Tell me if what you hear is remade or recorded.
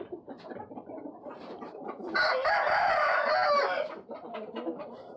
remade